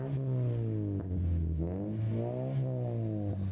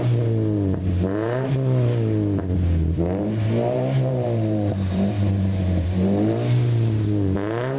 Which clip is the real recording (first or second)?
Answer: first